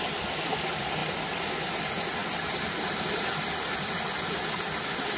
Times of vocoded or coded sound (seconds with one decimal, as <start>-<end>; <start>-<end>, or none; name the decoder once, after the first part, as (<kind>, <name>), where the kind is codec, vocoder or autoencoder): none